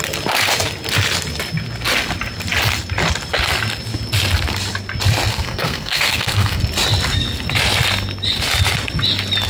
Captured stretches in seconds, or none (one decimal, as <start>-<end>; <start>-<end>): 0.0-5.3; 6.6-9.5